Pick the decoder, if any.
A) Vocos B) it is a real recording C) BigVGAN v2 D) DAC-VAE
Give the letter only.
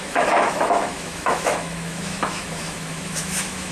D